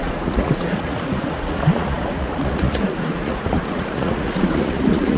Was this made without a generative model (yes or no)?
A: no